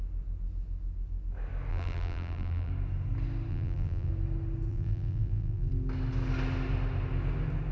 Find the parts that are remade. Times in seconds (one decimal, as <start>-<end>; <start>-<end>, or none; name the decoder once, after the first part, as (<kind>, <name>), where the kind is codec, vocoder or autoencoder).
1.7-2.7 (vocoder, BigVGAN v2); 3.5-4.1; 4.7-5.7